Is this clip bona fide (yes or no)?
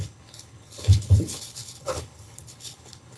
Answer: no